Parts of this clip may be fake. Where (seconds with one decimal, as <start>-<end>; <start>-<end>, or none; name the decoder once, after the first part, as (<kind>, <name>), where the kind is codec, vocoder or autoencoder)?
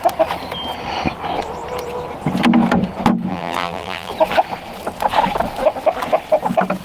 3.3-4.1 (vocoder, BigVGAN v2)